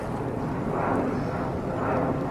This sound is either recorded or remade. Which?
recorded